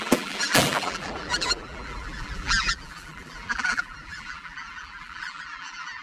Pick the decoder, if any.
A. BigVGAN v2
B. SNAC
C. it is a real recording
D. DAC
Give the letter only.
A